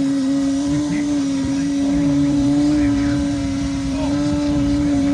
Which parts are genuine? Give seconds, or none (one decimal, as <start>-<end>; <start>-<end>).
none